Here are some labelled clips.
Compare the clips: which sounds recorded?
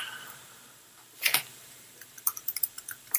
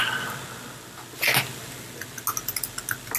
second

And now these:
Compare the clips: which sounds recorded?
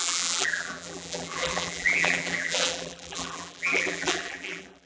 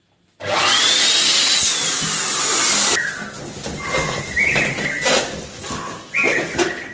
second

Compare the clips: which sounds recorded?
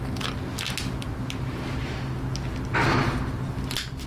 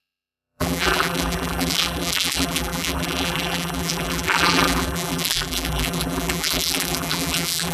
first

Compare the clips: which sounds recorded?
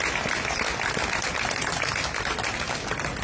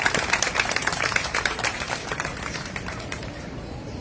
first